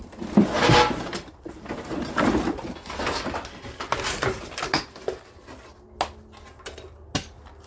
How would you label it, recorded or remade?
recorded